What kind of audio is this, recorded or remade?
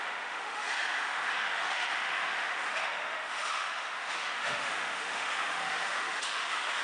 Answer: remade